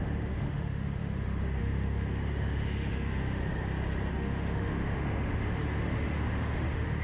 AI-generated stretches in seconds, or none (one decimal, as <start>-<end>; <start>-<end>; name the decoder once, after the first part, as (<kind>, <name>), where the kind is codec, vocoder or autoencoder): 0.0-3.4 (autoencoder, DAC-VAE); 4.1-7.0